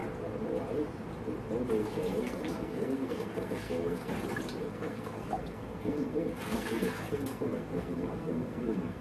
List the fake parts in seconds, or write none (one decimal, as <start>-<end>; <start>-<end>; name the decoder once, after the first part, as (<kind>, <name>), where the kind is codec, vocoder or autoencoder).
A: 1.8-4.1 (codec, SNAC); 4.6-9.0

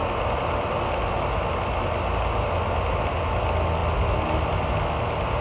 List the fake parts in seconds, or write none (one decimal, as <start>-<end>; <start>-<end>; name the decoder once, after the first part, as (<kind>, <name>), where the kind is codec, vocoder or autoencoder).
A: none

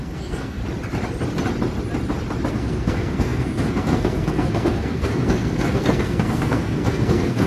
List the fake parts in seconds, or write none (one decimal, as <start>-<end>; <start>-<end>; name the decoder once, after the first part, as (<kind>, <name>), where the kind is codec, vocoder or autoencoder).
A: 0.0-0.6 (codec, SNAC); 2.5-7.5

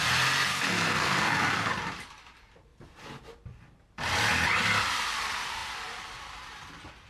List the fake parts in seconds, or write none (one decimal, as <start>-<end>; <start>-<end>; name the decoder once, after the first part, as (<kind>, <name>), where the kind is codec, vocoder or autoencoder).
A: 0.5-1.7 (codec, SNAC)

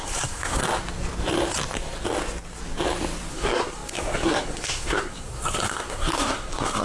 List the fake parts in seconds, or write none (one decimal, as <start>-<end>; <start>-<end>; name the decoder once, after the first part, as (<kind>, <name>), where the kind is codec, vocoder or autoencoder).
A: 0.0-0.6 (codec, SNAC); 3.3-6.8

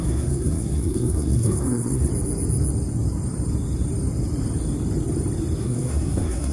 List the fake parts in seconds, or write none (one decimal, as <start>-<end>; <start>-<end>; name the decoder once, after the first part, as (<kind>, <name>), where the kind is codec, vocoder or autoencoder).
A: 0.0-2.1 (codec, SNAC); 5.6-6.5

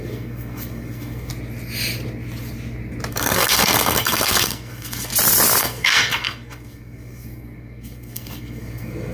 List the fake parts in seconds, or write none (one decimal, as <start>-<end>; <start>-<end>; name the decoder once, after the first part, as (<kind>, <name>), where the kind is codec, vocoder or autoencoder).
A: 0.0-1.3 (codec, SNAC); 3.1-5.1; 5.6-9.1

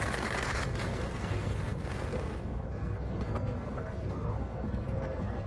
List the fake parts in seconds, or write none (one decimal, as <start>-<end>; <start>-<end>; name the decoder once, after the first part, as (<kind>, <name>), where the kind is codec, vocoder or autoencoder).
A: 0.0-5.5 (codec, SNAC)